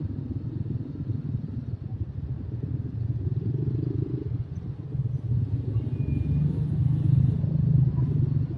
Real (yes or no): yes